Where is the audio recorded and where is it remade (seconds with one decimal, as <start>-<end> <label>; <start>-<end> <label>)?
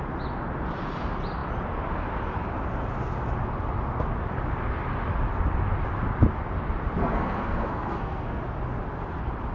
0.0-7.0 recorded; 7.0-8.4 remade; 8.4-9.5 recorded